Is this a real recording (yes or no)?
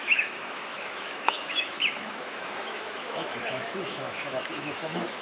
no